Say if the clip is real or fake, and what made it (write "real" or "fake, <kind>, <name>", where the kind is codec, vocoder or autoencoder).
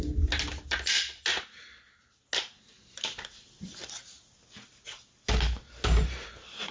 real